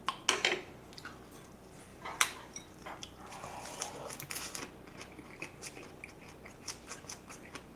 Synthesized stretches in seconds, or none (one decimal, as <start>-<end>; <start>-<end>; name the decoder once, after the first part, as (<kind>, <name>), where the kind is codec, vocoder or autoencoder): 1.9-2.8 (vocoder, BigVGAN v2)